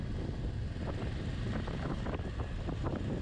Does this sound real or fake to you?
fake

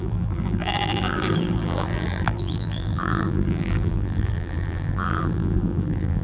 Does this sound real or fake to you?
fake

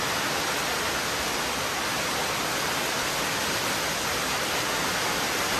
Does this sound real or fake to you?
real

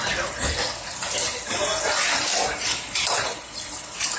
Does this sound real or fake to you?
real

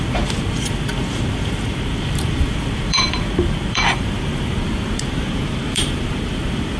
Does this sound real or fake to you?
fake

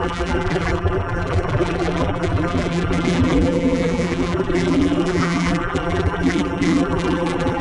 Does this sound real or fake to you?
fake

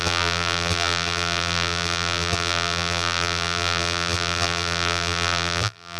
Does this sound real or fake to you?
fake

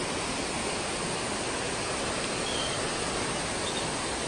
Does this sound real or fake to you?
real